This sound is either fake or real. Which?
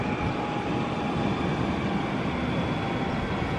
real